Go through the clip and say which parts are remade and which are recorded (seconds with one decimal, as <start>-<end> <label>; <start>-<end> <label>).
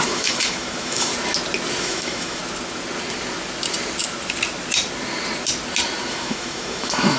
0.0-1.1 remade; 1.1-1.8 recorded; 1.8-2.4 remade; 2.4-6.1 recorded; 6.1-7.2 remade